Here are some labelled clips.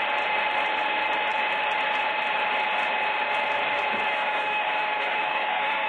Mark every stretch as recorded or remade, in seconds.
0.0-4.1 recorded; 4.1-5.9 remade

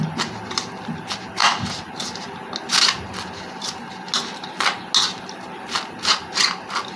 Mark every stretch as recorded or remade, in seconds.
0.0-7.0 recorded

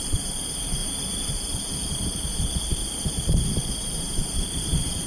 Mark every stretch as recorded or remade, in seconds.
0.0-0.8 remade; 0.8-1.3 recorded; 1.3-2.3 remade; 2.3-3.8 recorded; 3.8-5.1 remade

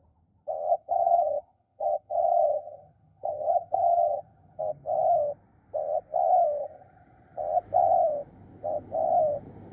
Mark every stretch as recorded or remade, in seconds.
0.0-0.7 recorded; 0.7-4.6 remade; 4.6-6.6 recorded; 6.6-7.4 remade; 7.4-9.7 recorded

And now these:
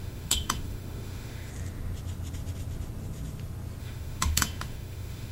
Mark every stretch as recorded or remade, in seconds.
0.0-1.5 remade; 1.5-3.8 recorded; 3.8-5.3 remade